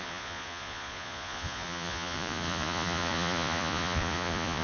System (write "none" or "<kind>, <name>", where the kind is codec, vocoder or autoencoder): vocoder, Vocos